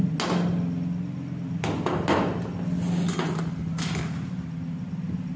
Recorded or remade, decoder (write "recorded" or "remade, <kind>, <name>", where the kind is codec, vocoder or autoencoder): recorded